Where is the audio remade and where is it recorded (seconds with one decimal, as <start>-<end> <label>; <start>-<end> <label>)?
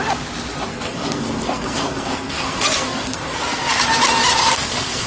0.0-0.7 recorded; 0.7-3.8 remade; 3.8-4.4 recorded; 4.4-5.1 remade